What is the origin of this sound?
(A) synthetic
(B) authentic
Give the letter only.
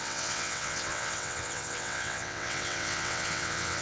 A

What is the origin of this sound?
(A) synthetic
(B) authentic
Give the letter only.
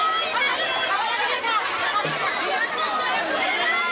B